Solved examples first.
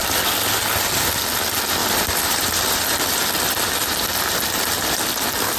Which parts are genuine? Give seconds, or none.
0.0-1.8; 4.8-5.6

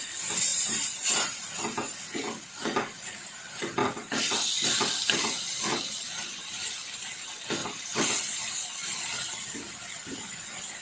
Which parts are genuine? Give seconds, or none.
0.0-0.5; 1.5-3.8; 7.1-7.6; 8.1-10.8

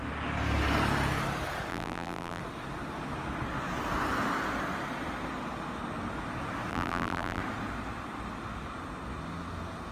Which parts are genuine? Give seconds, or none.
0.0-1.7; 2.4-6.7; 7.4-9.9

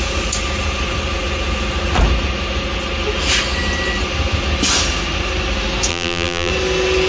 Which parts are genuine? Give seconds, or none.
0.0-5.9; 6.5-7.1

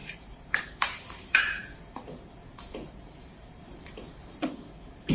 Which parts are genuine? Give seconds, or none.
none

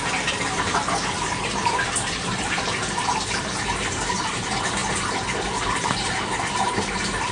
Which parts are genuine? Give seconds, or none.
4.8-6.4

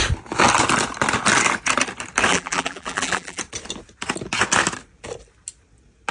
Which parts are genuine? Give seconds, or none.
0.0-2.3; 3.4-6.1